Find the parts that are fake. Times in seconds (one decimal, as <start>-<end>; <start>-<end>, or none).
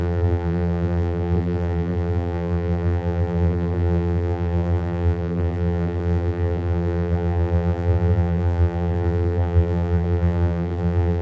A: 0.0-11.2